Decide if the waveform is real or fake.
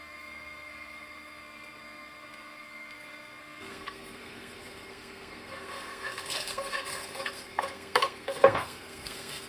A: fake